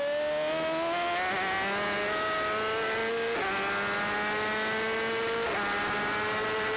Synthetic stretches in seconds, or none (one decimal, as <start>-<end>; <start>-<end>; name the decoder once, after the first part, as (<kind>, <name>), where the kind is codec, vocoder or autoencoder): none